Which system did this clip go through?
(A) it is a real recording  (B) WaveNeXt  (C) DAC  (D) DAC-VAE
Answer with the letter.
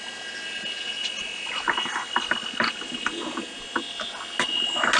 A